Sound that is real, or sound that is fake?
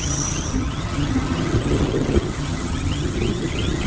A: fake